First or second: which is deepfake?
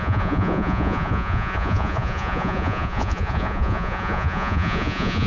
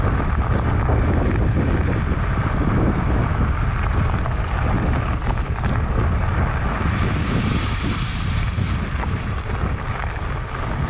first